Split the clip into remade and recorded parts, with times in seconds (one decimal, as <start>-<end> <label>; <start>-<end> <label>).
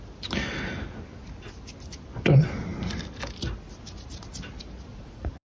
0.0-4.9 recorded; 4.9-5.5 remade